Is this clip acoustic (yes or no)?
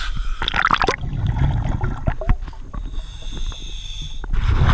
yes